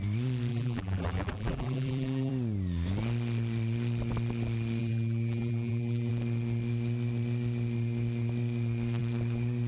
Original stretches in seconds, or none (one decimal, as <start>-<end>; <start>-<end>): 0.0-0.5; 2.3-4.8; 6.1-9.7